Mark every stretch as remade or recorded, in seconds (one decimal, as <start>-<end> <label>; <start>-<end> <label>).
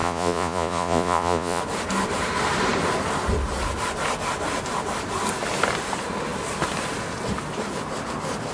0.0-1.6 remade; 1.6-8.5 recorded